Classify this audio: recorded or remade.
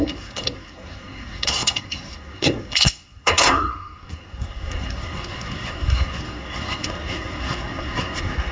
remade